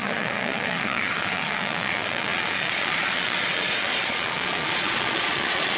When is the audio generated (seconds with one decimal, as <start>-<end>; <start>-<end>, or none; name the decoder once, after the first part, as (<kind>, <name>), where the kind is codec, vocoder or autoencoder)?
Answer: 0.0-5.8 (vocoder, Vocos)